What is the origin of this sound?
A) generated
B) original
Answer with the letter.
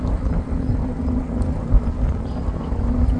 B